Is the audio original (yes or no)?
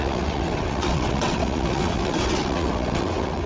no